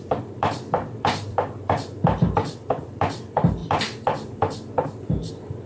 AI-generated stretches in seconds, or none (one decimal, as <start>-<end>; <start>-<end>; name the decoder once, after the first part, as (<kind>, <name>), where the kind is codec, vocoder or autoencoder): 0.0-5.7 (vocoder, BigVGAN v2)